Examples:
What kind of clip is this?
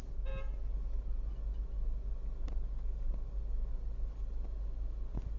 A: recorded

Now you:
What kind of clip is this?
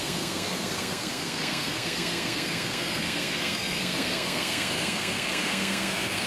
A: remade